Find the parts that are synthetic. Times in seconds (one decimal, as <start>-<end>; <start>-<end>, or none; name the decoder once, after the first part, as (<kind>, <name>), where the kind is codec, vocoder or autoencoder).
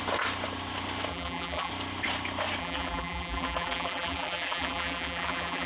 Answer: 1.1-1.7 (vocoder, BigVGAN v2); 2.6-5.7